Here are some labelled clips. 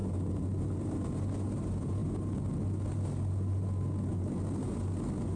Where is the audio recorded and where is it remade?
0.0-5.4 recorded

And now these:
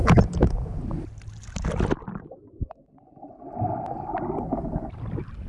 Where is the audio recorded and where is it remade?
0.0-0.8 remade; 0.8-5.5 recorded

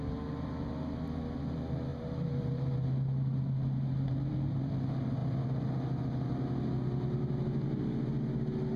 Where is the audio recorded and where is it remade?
0.0-1.9 recorded; 1.9-4.7 remade; 4.7-8.8 recorded

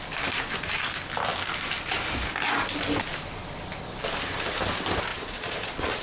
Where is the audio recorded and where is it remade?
0.0-5.1 recorded; 5.1-6.0 remade

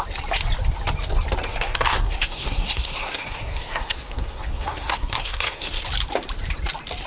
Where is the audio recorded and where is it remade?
0.0-1.5 recorded; 1.5-5.8 remade; 5.8-7.1 recorded